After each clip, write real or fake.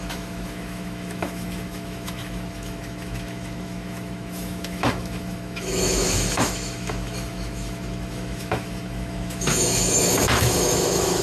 fake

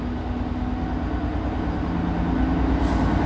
real